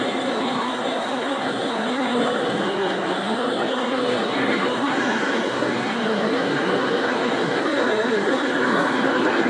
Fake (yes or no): yes